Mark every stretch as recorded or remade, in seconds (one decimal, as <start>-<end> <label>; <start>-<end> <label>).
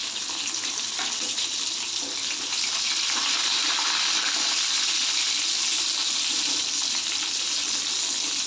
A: 0.0-8.5 recorded